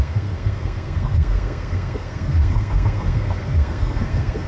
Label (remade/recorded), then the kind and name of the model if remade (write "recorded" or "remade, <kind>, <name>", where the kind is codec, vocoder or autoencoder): remade, codec, SNAC